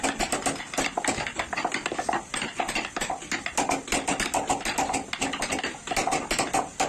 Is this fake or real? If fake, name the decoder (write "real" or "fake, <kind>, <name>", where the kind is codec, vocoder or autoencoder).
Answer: real